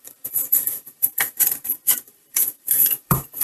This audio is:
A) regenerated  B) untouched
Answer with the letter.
A